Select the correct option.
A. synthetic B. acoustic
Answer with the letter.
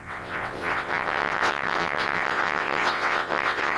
A